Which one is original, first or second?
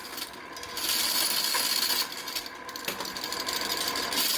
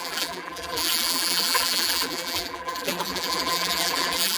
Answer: first